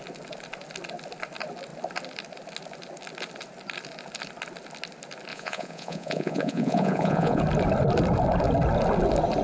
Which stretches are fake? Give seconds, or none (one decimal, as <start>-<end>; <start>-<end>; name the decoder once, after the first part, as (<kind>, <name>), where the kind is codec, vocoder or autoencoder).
5.3-7.4 (vocoder, Vocos)